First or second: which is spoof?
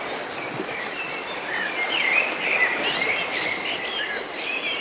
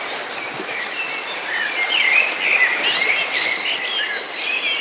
first